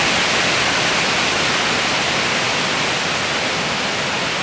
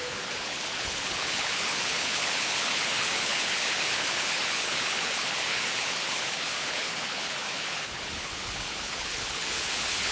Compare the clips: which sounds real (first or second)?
first